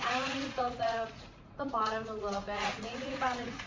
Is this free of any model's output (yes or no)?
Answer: no